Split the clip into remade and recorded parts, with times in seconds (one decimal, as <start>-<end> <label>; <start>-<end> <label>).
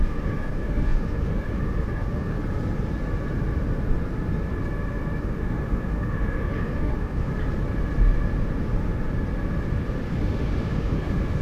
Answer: 0.0-2.3 remade; 2.3-5.2 recorded; 5.2-7.3 remade; 7.3-10.2 recorded; 10.2-11.4 remade